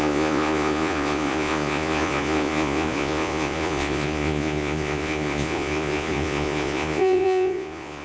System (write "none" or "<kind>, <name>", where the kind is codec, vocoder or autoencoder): vocoder, Vocos